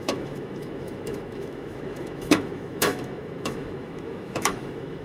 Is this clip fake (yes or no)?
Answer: yes